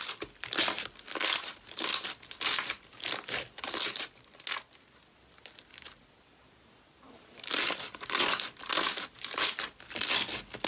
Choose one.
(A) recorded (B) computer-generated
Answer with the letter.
A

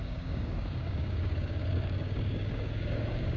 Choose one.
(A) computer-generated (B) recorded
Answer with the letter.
A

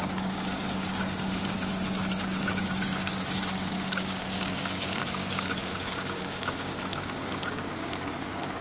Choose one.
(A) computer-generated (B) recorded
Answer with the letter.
A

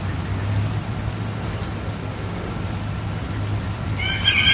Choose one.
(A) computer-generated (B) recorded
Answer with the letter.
B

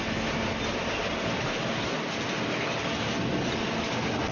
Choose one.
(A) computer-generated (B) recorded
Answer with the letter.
B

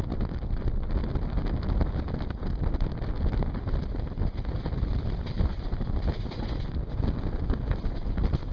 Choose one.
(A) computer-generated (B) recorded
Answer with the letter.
B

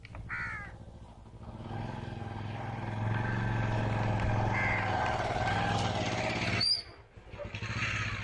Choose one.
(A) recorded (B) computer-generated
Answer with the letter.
A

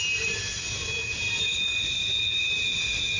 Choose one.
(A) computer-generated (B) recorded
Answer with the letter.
B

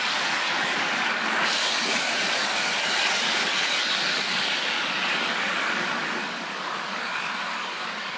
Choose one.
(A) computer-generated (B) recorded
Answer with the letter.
A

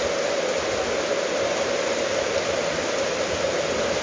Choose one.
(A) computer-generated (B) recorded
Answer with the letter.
B